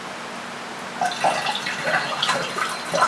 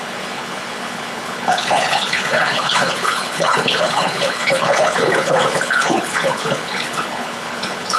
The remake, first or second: second